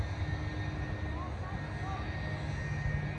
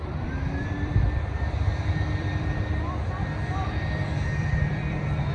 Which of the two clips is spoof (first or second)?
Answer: second